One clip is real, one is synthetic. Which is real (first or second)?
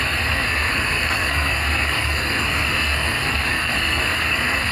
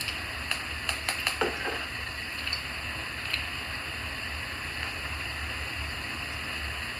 second